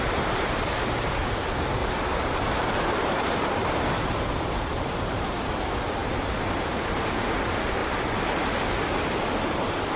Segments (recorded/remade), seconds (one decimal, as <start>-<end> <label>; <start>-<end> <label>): 0.0-1.8 recorded; 1.8-5.4 remade; 5.4-10.0 recorded